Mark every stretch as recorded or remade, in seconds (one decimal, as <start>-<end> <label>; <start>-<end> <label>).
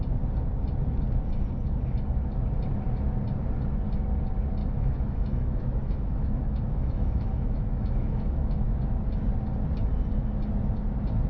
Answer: 0.0-4.6 recorded; 4.6-8.7 remade; 8.7-11.3 recorded